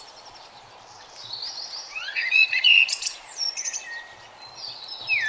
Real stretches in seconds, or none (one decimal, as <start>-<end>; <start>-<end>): 0.0-1.8; 3.8-5.3